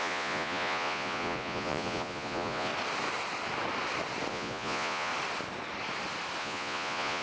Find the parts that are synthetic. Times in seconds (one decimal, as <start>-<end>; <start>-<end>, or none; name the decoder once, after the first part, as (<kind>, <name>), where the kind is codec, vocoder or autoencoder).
0.0-2.7 (vocoder, Vocos); 4.3-5.1; 6.4-7.2